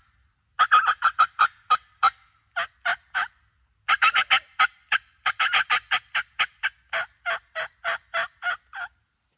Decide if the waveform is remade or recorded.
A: recorded